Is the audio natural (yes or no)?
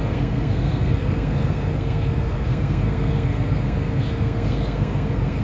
no